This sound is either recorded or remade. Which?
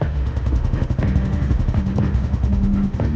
remade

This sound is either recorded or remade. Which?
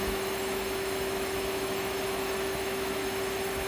remade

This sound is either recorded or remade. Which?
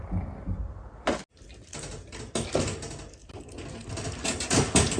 recorded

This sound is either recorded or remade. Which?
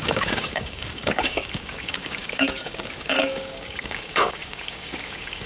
remade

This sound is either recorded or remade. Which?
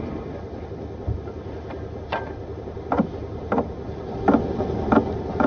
recorded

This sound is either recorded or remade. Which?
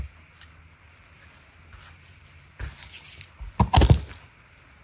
recorded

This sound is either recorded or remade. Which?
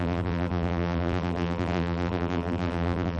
remade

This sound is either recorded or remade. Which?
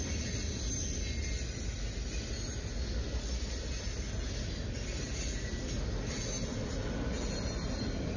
recorded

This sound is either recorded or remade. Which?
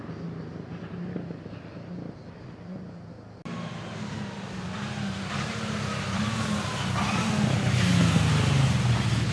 recorded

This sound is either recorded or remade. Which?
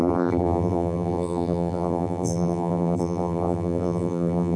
remade